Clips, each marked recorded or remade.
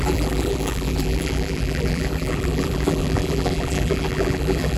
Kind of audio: remade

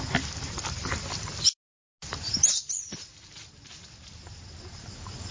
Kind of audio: recorded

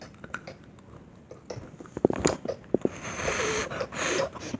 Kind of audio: recorded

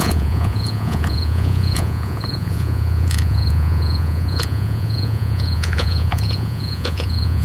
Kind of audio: remade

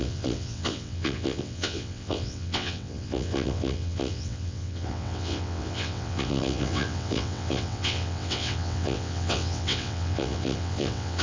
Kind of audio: remade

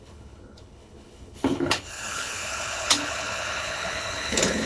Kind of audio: remade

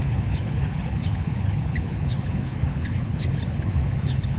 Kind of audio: remade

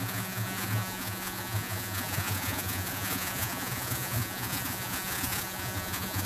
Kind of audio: remade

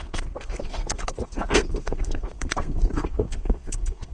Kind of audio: remade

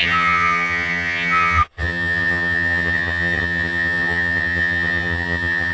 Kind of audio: remade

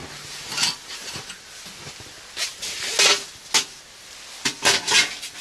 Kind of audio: recorded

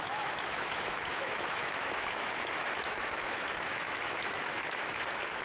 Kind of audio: remade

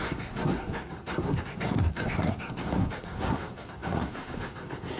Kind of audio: remade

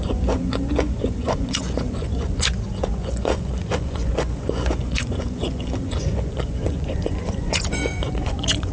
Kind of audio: remade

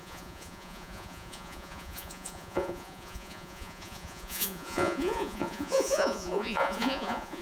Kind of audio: remade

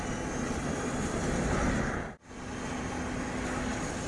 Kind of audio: recorded